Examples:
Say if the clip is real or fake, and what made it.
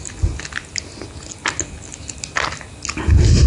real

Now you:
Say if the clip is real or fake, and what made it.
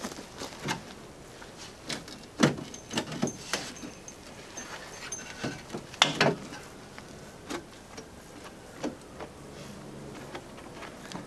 real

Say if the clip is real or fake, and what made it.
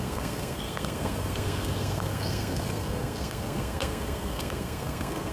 fake, codec, SNAC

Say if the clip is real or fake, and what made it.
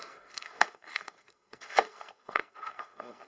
fake, codec, SNAC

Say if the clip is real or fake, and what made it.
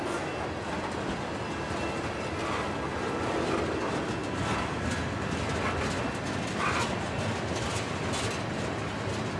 real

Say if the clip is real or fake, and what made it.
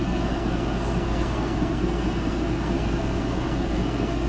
fake, codec, SNAC